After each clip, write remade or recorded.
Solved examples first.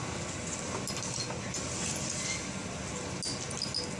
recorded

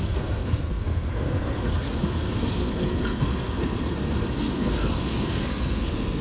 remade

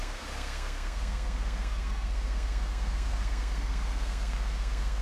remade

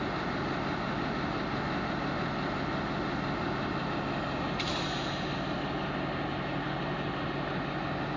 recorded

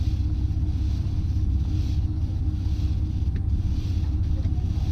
recorded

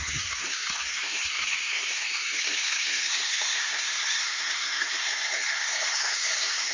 remade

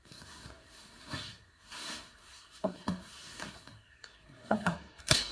remade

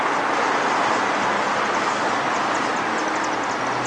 recorded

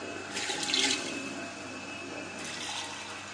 recorded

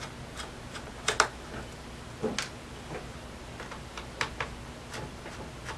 recorded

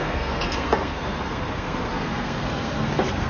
remade